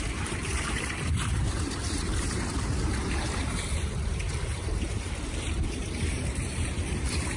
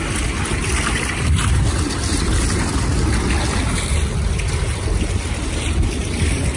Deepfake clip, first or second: first